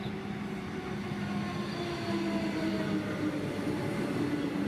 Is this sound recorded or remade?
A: recorded